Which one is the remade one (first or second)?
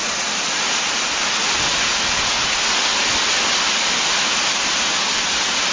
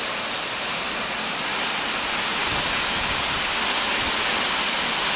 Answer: second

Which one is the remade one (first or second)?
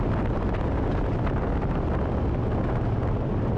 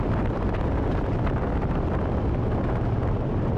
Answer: second